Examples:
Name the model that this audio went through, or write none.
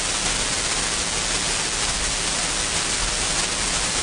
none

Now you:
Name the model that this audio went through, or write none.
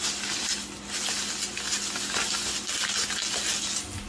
none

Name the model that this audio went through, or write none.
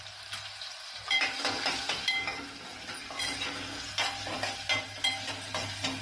none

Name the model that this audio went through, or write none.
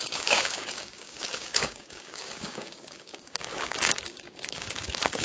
codec, DAC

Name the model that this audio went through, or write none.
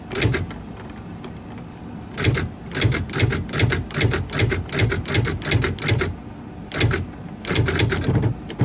none